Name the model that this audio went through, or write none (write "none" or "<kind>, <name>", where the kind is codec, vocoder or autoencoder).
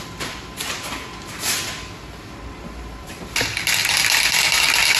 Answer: none